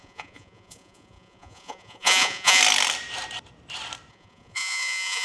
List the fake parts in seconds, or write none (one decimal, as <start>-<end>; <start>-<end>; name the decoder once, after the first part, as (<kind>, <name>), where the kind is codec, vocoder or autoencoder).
0.0-2.6 (vocoder, Vocos); 4.1-5.2